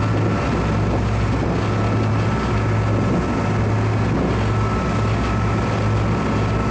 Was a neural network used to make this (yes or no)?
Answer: no